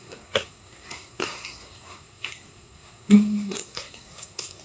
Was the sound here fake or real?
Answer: fake